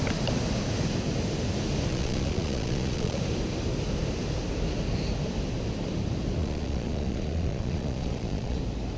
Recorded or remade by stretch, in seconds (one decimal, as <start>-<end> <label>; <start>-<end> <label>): 0.0-1.9 recorded; 1.9-3.2 remade; 3.2-6.4 recorded; 6.4-8.6 remade; 8.6-9.0 recorded